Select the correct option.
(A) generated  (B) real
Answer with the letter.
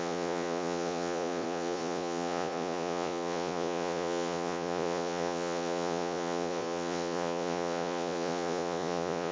A